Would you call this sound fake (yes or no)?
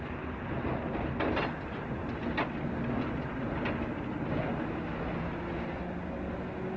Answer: no